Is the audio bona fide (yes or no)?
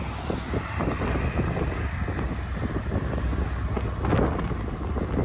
yes